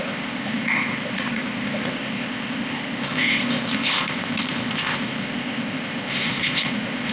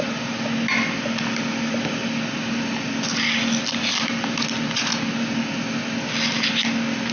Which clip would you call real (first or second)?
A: second